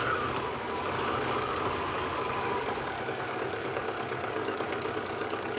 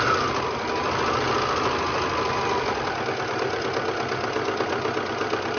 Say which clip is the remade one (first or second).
first